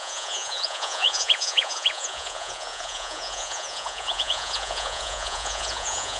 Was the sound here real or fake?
fake